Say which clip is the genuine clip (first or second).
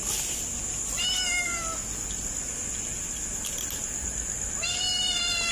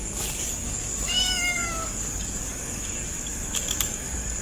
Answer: first